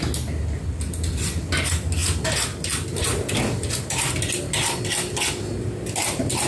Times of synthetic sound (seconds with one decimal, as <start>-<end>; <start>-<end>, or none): none